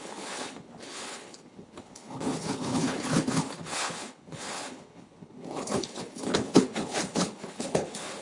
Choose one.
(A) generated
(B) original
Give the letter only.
A